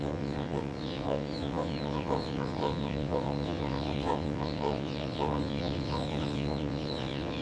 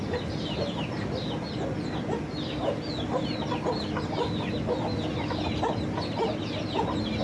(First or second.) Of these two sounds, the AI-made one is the first